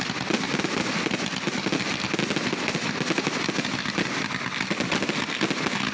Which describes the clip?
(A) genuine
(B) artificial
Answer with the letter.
A